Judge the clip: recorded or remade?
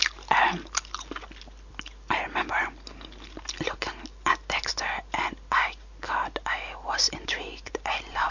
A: recorded